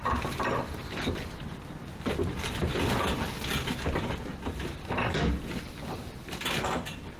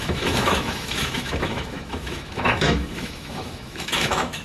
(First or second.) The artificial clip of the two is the second